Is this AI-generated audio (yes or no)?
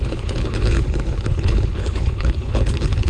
yes